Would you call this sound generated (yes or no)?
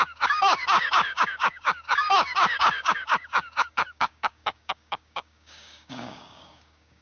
yes